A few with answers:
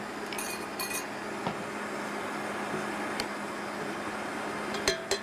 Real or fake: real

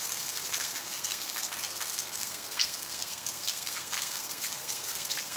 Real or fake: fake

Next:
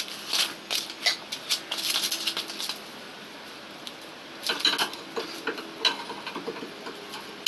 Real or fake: real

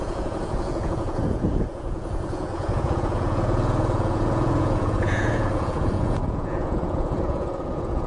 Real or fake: fake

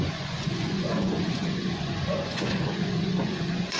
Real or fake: fake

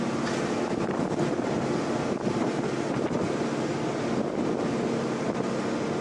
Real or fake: real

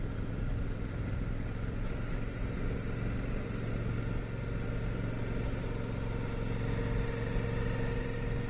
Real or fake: real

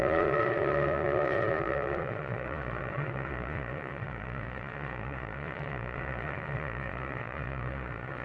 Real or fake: fake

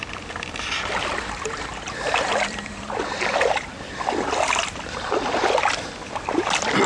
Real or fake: fake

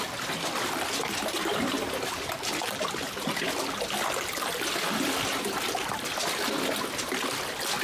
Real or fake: real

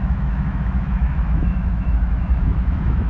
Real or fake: fake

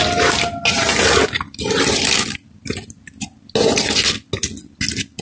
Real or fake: real